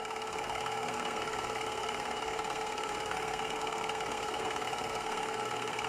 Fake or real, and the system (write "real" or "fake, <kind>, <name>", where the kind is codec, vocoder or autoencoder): fake, codec, SNAC